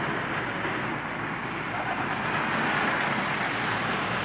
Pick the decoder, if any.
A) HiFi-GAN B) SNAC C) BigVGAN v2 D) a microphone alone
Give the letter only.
D